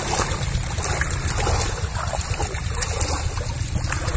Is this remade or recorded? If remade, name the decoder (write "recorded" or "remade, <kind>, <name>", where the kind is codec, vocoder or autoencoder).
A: recorded